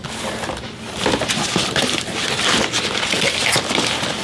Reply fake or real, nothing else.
real